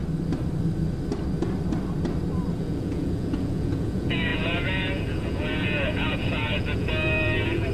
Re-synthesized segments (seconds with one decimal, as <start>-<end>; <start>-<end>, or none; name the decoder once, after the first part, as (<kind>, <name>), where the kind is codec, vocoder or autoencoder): 2.5-7.7 (vocoder, Vocos)